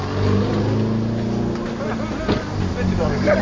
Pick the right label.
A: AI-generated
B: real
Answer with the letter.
B